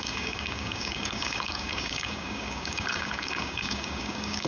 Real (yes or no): no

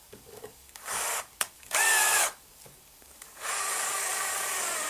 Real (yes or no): no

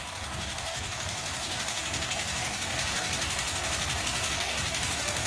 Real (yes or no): no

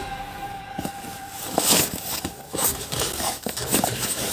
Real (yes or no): no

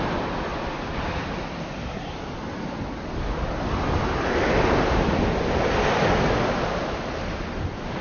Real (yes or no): yes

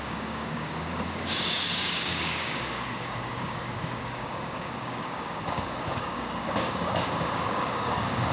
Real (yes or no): no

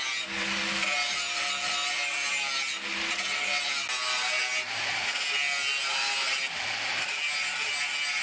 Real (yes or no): yes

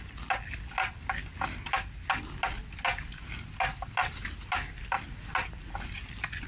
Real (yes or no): yes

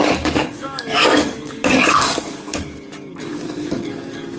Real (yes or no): no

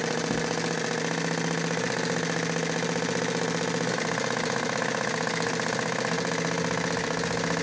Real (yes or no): yes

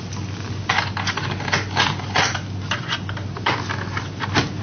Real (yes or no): yes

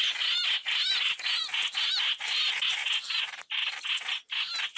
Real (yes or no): yes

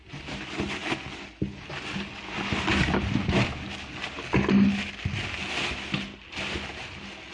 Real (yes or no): yes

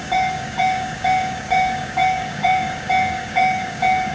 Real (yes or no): no